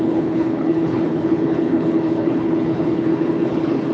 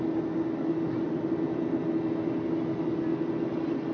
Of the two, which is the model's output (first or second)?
first